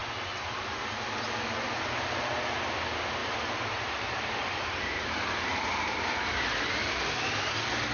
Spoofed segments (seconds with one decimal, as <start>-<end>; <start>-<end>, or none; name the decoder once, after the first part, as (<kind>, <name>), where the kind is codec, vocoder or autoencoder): 3.2-5.2 (vocoder, BigVGAN v2); 5.7-6.3